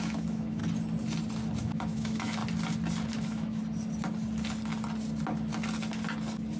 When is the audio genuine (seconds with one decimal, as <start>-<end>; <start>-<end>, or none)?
0.6-1.6; 2.4-3.1; 3.6-6.6